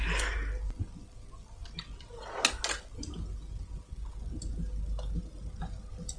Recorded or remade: recorded